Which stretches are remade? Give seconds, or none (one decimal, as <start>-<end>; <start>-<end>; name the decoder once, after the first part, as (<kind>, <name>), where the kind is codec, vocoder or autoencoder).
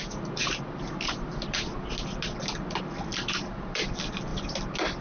none